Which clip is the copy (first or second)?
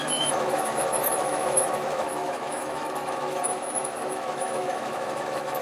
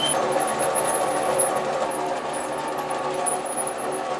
first